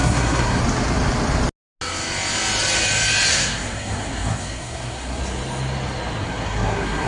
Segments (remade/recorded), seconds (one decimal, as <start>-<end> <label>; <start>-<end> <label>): 0.0-0.6 remade; 0.6-3.3 recorded; 3.3-5.2 remade; 5.2-6.2 recorded; 6.2-7.1 remade